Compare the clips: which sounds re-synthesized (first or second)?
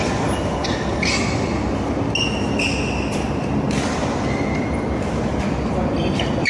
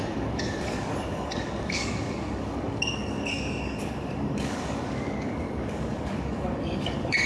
second